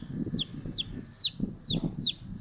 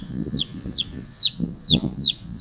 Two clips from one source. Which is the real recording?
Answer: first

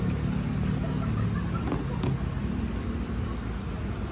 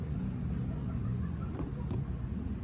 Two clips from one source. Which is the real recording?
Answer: first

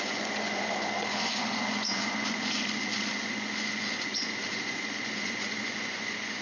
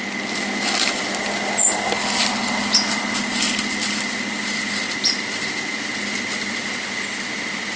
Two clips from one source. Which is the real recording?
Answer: second